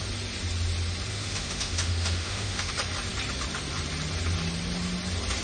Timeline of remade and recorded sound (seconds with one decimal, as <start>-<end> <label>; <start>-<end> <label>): 0.0-1.1 recorded; 1.1-2.7 remade; 2.7-5.4 recorded